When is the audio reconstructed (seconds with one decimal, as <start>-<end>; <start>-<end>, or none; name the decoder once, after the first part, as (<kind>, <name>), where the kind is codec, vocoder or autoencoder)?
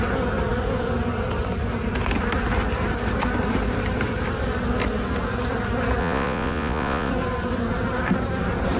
6.0-7.1 (vocoder, Vocos)